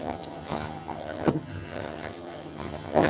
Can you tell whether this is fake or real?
fake